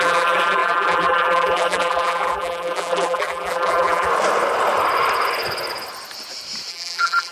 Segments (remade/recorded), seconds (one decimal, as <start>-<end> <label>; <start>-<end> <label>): 0.0-4.1 remade; 4.1-6.7 recorded; 6.7-7.3 remade